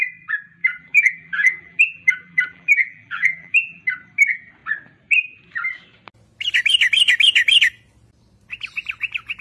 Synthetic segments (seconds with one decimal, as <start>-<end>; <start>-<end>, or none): 0.6-3.8